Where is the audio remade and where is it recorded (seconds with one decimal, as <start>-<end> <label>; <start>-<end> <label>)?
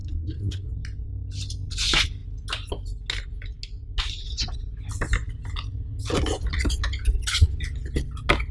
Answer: 0.0-0.7 remade; 0.7-8.5 recorded